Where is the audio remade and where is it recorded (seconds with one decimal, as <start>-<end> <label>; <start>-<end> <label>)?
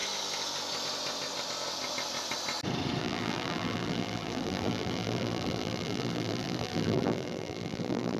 0.0-3.0 recorded; 3.0-8.2 remade